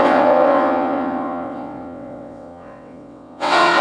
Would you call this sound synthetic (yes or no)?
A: yes